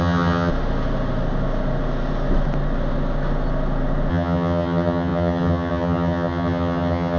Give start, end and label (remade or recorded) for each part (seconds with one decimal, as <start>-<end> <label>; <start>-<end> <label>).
0.0-0.5 remade; 0.5-4.1 recorded; 4.1-7.2 remade